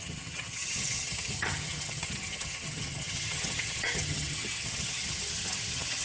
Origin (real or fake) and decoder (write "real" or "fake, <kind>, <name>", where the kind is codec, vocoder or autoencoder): fake, vocoder, HiFi-GAN